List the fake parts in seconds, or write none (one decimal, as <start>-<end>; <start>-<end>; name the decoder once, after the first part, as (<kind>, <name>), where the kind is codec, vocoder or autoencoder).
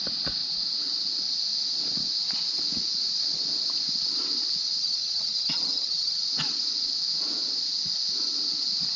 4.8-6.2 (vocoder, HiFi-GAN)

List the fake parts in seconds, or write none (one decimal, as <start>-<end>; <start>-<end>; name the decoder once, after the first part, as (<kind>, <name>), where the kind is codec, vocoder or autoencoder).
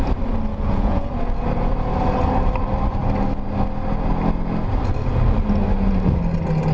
0.5-1.1 (vocoder, Vocos)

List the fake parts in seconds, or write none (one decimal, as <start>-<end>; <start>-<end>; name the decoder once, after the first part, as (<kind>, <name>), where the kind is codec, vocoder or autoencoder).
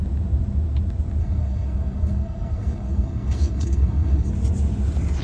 1.2-4.3 (codec, SNAC)